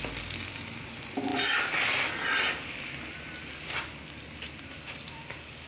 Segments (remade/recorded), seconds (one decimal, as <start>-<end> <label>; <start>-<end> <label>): 0.0-5.7 recorded